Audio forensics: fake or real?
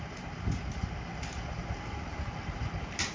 real